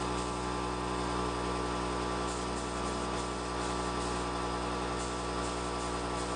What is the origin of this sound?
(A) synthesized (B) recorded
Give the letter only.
B